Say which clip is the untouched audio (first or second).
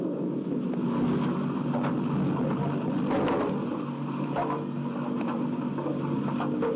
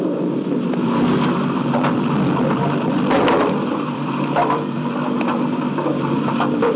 first